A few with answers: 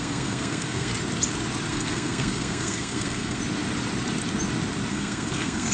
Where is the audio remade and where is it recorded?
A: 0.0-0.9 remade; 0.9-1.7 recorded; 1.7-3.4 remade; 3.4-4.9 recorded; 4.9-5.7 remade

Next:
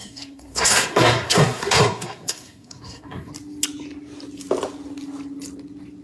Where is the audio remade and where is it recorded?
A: 0.0-3.3 remade; 3.3-6.0 recorded

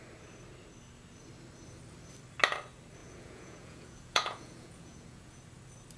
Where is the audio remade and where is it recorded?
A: 0.0-3.0 recorded; 3.0-5.4 remade; 5.4-6.0 recorded